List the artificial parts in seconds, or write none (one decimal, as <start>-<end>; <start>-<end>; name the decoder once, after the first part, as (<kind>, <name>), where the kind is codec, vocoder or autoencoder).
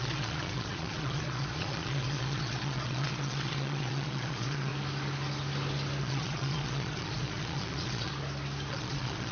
0.0-4.7 (vocoder, Vocos); 6.0-8.1; 8.7-9.3